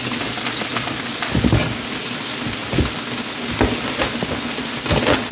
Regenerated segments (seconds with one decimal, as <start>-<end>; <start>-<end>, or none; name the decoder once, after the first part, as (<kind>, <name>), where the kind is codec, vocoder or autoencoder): none